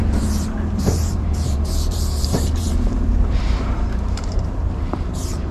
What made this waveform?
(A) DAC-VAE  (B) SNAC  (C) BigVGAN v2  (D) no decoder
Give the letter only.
C